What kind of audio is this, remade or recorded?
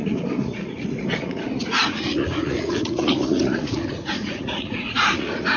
remade